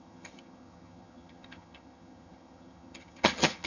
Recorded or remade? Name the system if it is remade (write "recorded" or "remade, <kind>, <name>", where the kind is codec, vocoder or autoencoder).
remade, vocoder, HiFi-GAN